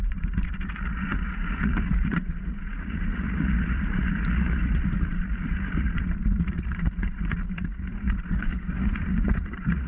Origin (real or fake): fake